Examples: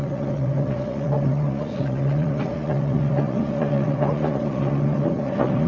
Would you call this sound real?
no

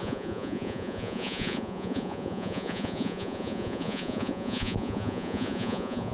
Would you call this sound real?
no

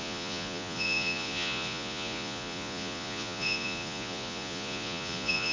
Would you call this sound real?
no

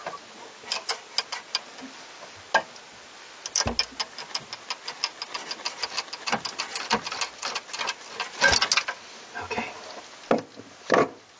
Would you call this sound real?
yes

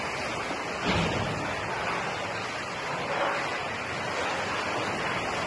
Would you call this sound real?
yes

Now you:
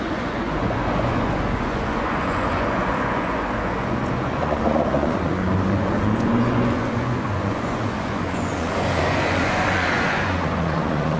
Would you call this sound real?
no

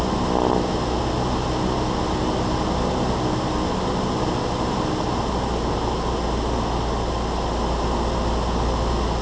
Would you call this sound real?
yes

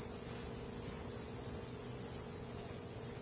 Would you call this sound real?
no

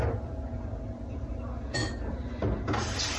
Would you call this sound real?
yes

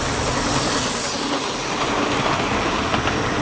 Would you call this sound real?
yes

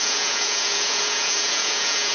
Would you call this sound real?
no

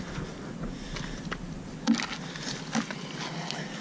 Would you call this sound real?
yes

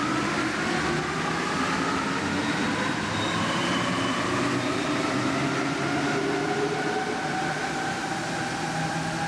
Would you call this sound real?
yes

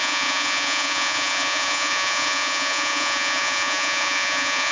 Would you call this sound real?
no